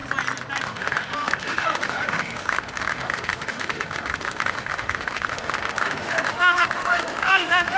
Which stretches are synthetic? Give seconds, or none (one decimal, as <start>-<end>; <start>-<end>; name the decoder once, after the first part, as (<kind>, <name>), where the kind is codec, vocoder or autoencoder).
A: 0.6-7.8 (autoencoder, DAC-VAE)